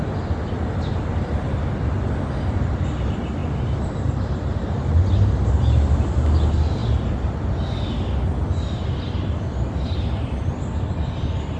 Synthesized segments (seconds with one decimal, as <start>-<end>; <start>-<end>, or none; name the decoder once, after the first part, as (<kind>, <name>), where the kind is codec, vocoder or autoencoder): none